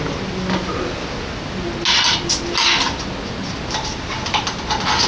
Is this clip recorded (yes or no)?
yes